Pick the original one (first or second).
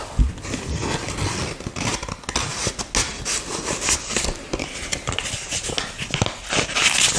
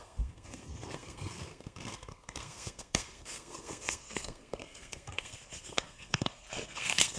first